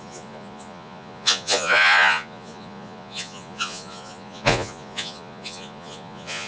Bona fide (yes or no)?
no